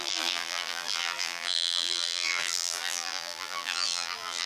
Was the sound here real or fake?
fake